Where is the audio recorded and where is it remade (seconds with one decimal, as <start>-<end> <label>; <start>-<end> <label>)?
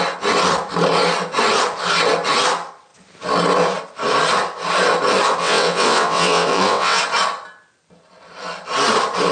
0.0-5.4 recorded; 5.4-7.0 remade; 7.0-9.3 recorded